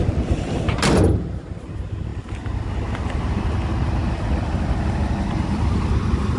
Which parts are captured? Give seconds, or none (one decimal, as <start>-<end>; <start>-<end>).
0.0-6.4